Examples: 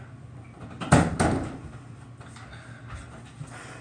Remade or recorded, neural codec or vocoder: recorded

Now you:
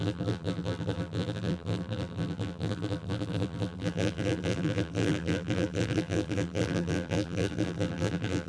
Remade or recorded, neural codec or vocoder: remade, vocoder, BigVGAN v2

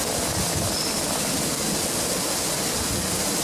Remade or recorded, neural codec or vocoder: recorded